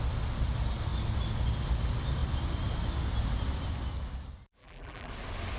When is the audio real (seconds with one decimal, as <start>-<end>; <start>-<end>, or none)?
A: 0.0-4.6; 5.1-5.6